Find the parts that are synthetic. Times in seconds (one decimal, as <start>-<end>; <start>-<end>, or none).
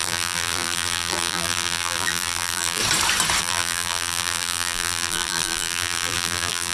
0.0-2.8; 3.4-6.7